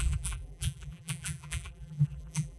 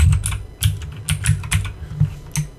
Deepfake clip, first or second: first